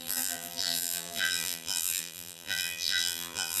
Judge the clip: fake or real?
fake